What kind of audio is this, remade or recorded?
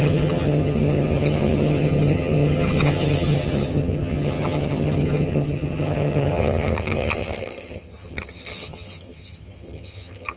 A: remade